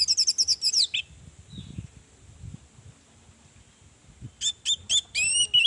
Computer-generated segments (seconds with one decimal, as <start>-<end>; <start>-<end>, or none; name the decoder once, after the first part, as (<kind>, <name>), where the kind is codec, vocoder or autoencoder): none